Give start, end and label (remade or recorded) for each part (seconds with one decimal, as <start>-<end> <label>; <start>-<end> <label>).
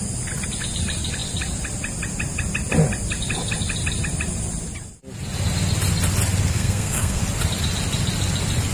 0.0-6.5 recorded; 6.5-7.2 remade; 7.2-8.7 recorded